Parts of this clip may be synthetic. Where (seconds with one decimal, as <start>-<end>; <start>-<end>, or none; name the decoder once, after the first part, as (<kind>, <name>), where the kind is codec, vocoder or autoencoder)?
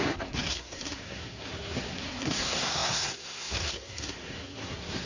0.0-5.1 (codec, SNAC)